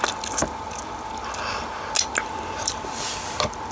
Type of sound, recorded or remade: recorded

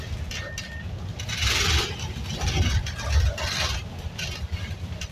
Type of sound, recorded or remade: recorded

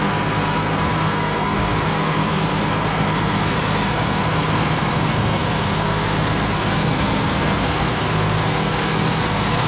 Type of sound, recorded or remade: remade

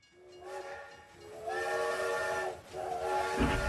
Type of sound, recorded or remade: recorded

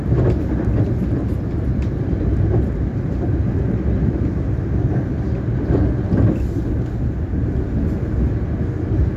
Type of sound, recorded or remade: recorded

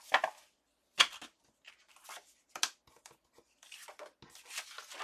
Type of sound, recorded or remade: recorded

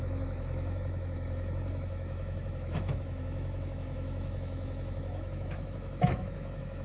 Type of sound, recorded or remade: remade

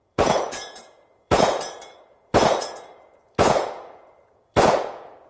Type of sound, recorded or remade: remade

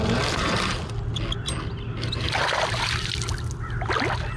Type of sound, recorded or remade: recorded